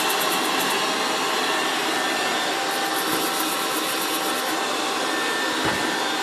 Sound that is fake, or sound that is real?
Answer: real